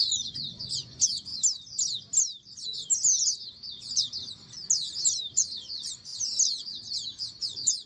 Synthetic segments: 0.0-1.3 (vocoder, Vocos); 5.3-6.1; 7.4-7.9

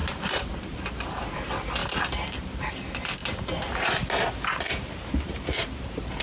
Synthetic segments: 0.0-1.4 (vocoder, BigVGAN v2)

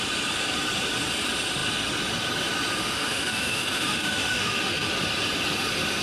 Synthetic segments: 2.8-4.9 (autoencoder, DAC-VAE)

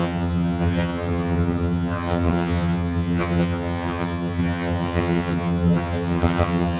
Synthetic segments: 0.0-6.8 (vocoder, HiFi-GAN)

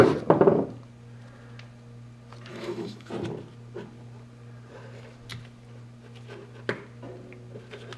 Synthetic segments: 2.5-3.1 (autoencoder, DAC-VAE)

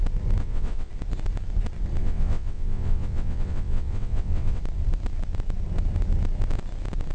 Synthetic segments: 0.4-0.9 (vocoder, WaveNeXt); 2.0-4.6

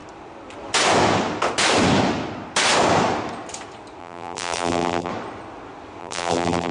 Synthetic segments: 4.0-5.1 (vocoder, BigVGAN v2); 6.0-6.7

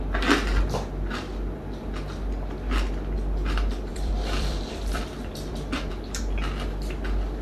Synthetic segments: 3.9-5.9 (vocoder, BigVGAN v2)